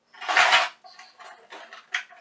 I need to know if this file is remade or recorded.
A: recorded